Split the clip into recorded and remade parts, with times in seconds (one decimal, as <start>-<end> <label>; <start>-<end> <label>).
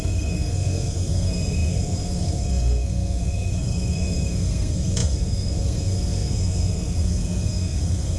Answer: 0.0-8.2 remade